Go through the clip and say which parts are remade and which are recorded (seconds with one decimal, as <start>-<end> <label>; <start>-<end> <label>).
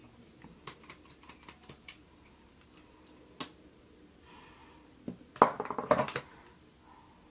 0.0-1.2 remade; 1.2-1.6 recorded; 1.6-3.2 remade; 3.2-7.3 recorded